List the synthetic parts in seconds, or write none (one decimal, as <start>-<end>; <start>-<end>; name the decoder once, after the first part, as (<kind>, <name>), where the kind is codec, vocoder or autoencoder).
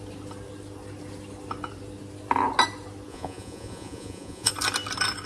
3.1-4.5 (vocoder, Vocos)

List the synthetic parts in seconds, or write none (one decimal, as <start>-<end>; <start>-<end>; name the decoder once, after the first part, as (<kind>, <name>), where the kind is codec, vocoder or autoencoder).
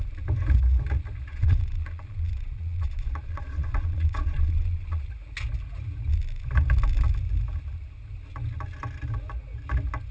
1.3-5.1 (vocoder, Vocos)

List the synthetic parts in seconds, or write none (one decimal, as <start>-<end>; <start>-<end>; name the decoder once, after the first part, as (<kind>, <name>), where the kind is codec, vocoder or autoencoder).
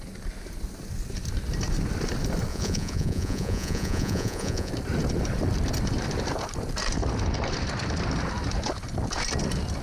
2.5-4.7 (vocoder, Vocos)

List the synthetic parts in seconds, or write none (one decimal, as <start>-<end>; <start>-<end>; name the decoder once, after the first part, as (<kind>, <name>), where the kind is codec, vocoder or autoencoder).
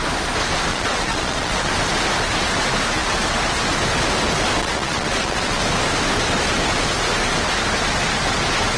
0.7-1.7 (vocoder, Vocos); 4.6-5.6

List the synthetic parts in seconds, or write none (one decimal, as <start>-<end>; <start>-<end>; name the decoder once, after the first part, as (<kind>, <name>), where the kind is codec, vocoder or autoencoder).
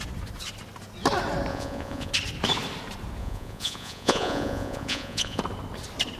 1.5-2.1 (vocoder, Vocos); 3.2-5.4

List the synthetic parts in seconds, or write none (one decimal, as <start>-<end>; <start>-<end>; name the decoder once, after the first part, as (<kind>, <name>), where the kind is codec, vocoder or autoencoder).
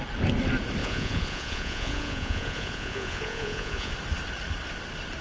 0.8-3.9 (vocoder, Vocos)